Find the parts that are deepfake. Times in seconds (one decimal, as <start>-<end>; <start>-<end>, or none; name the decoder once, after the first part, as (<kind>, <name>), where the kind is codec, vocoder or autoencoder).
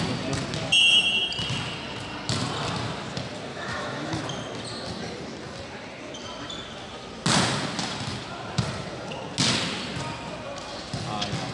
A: 3.5-4.2 (autoencoder, DAC-VAE)